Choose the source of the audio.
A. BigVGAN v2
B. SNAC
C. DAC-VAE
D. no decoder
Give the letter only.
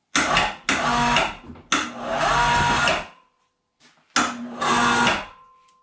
D